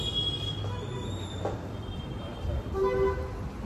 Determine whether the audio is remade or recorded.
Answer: recorded